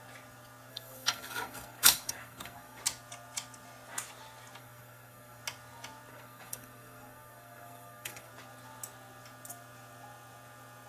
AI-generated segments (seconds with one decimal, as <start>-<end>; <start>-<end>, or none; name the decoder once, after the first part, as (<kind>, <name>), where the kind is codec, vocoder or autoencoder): 0.7-2.8 (codec, SNAC); 4.6-5.4; 6.1-8.3

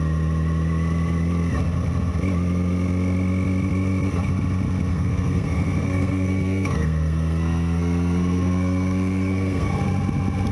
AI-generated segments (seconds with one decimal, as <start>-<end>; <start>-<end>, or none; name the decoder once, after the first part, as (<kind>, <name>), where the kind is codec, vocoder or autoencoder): 4.9-9.8 (codec, SNAC)

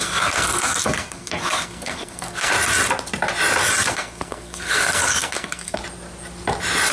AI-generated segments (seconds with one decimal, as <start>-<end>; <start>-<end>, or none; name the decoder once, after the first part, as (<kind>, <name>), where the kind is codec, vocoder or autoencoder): 0.0-2.5 (codec, SNAC); 3.9-5.8